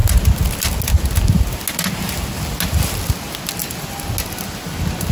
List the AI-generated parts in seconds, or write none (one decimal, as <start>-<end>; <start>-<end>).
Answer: 3.6-4.1